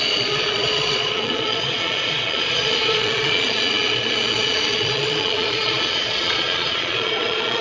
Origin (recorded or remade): remade